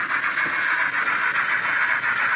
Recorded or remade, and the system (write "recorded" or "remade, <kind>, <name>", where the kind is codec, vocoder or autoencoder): recorded